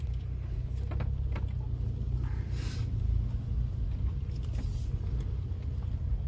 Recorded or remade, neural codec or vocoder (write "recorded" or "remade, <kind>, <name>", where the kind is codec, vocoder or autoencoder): recorded